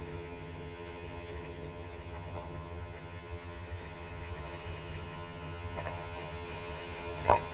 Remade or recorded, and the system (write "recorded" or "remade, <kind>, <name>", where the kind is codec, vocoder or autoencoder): remade, vocoder, HiFi-GAN